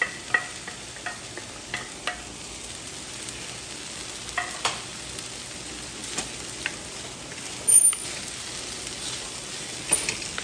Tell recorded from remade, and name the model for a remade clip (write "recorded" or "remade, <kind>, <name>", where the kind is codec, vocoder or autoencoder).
recorded